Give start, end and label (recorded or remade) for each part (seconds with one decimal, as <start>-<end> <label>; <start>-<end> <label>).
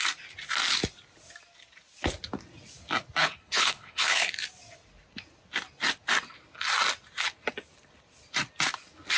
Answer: 0.0-3.2 recorded; 3.2-4.3 remade; 4.3-9.2 recorded